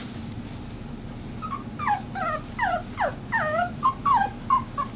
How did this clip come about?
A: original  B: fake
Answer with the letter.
A